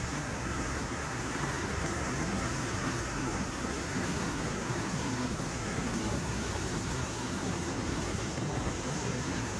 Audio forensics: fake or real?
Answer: fake